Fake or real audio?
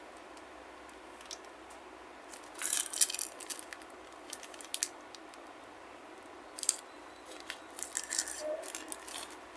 real